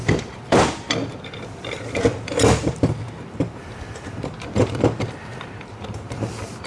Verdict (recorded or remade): remade